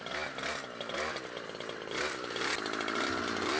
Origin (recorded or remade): recorded